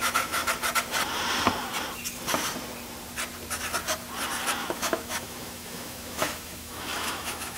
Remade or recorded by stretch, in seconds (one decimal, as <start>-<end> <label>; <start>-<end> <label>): 0.0-0.4 remade; 0.4-4.6 recorded; 4.6-7.6 remade